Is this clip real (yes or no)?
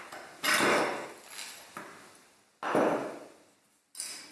yes